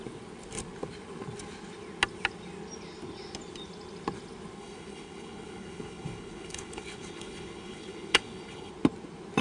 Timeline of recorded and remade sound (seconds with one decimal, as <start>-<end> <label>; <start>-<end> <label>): 0.0-4.6 recorded; 4.6-8.7 remade; 8.7-9.4 recorded